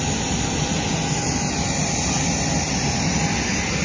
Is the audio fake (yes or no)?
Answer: no